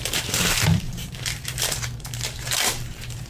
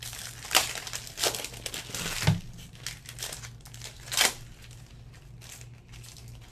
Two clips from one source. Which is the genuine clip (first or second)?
second